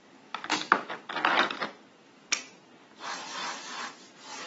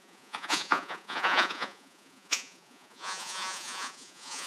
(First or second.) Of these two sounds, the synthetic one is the second